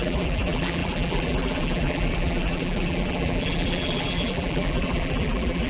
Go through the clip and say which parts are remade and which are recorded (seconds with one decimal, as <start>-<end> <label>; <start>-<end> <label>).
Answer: 0.0-5.7 remade